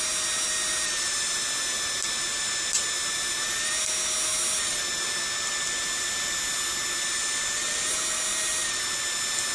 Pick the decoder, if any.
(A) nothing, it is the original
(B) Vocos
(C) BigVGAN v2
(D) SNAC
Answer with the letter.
A